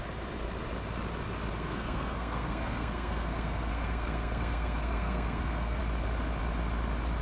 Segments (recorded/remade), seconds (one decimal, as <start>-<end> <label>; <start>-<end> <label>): 0.0-1.5 recorded; 1.5-5.8 remade; 5.8-7.2 recorded